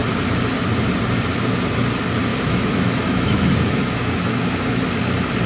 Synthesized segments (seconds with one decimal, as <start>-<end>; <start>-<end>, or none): 2.3-4.8

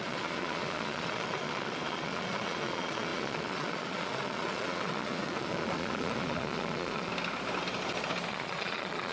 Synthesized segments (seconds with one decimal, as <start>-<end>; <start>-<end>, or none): 0.0-7.1; 8.3-9.1

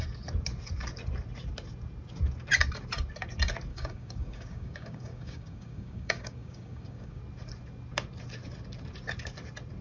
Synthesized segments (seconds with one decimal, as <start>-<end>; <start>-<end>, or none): 3.7-7.2

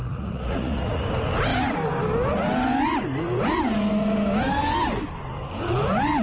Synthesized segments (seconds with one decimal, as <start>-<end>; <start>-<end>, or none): 0.0-1.0

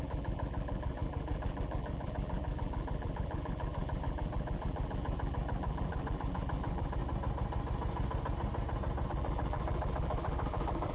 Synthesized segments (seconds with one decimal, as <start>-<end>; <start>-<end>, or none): 0.0-7.0; 9.1-10.9

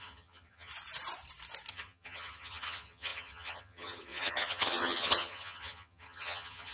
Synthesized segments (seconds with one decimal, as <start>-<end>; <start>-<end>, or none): 0.0-0.7; 1.7-6.7